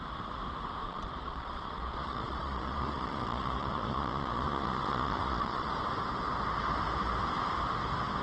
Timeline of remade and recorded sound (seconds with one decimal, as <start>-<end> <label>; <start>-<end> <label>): 0.0-0.8 recorded; 0.8-5.7 remade; 5.7-8.2 recorded

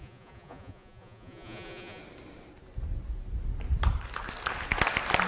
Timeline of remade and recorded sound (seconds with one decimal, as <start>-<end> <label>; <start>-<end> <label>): 0.0-2.0 remade; 2.0-5.3 recorded

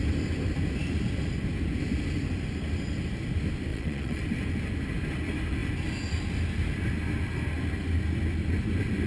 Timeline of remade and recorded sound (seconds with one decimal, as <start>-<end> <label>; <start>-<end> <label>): 0.0-3.7 recorded; 3.7-4.2 remade; 4.2-9.1 recorded

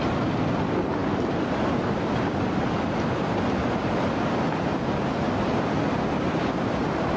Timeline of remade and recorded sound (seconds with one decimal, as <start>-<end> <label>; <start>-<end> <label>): 0.0-7.2 recorded

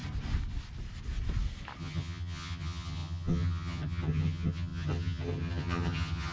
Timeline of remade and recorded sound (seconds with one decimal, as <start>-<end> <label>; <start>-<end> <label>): 0.0-1.8 recorded; 1.8-6.3 remade

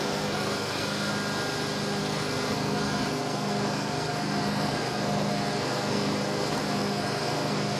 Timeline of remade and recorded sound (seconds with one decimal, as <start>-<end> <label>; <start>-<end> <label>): 0.0-1.1 remade; 1.1-2.0 recorded; 2.0-7.8 remade

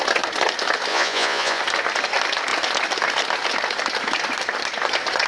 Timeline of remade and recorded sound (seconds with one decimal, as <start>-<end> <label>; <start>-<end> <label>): 0.0-0.9 recorded; 0.9-1.6 remade; 1.6-5.3 recorded